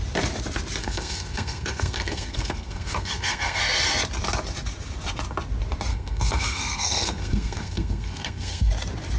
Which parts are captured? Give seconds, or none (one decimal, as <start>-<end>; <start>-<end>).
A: 0.0-0.8; 3.6-5.9; 8.7-9.2